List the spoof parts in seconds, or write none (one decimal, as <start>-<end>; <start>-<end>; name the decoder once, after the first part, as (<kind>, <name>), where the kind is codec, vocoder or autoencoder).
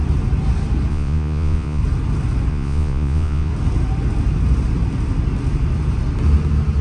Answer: 0.9-1.8 (vocoder, Vocos); 2.5-3.5